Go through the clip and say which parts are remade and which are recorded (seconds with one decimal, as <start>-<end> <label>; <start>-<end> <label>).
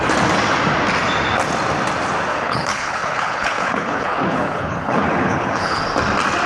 0.0-2.3 recorded; 2.3-5.8 remade; 5.8-6.5 recorded